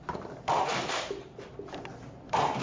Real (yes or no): yes